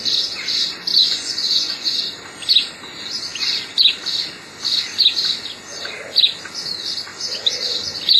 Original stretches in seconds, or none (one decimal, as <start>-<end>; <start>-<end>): 0.0-0.9; 2.0-8.2